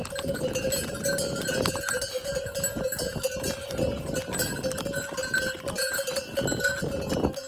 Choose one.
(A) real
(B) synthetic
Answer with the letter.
A